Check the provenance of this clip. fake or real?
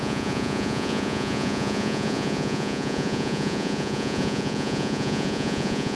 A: fake